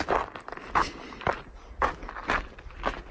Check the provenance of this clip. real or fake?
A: real